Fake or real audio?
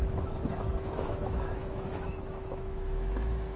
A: fake